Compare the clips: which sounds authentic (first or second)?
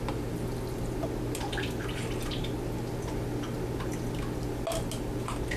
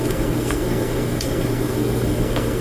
first